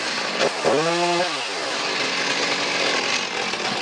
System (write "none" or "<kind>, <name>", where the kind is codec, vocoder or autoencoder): none